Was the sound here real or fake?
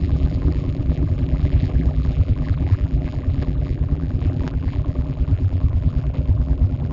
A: fake